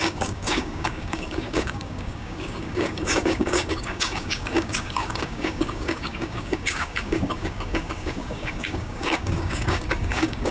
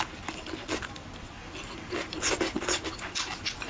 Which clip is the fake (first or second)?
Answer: first